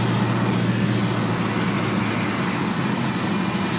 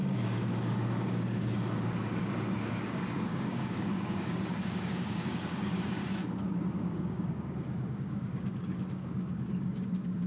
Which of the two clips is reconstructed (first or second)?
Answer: second